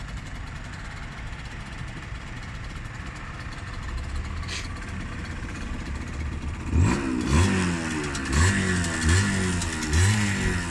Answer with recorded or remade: recorded